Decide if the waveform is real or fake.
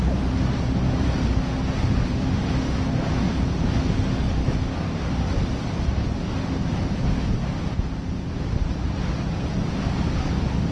real